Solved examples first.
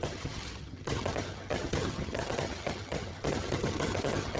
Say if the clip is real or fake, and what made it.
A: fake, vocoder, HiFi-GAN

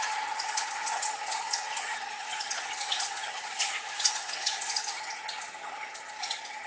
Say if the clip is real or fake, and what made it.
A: fake, vocoder, HiFi-GAN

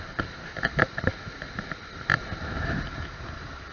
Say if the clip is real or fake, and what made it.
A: real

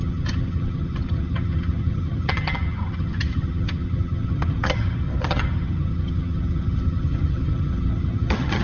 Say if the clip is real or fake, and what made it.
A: fake, vocoder, HiFi-GAN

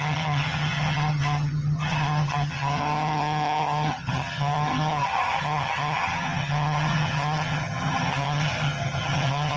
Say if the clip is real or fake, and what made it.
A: fake, vocoder, HiFi-GAN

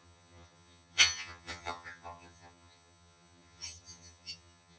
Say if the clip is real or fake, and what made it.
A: fake, vocoder, HiFi-GAN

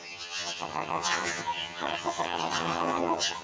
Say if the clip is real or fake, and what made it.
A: fake, vocoder, HiFi-GAN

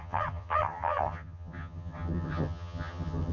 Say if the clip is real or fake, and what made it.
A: fake, vocoder, HiFi-GAN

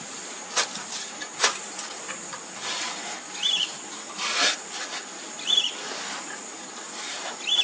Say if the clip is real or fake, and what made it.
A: real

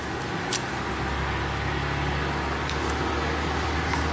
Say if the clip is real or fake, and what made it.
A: real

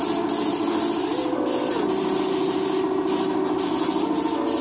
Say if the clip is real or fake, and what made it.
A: real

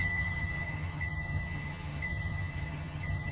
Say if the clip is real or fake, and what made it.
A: fake, vocoder, HiFi-GAN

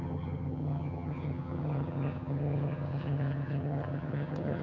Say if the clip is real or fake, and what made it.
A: fake, vocoder, HiFi-GAN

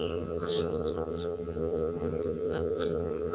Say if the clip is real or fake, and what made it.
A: fake, vocoder, HiFi-GAN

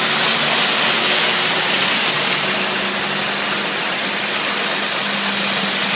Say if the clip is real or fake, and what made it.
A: real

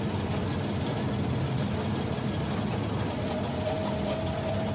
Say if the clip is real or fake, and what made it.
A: real